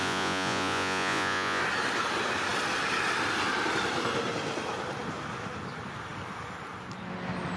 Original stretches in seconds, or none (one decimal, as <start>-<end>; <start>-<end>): 1.6-7.6